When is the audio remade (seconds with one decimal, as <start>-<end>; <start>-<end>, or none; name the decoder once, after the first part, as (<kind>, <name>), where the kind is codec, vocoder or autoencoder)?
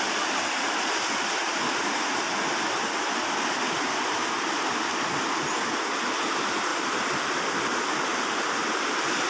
6.7-7.2 (vocoder, BigVGAN v2); 8.1-8.9